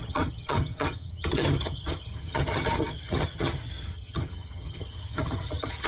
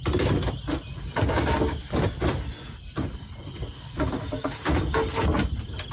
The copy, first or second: first